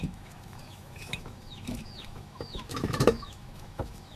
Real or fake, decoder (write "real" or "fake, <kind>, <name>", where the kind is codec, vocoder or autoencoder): fake, autoencoder, DAC-VAE